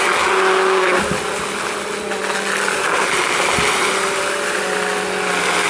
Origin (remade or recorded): recorded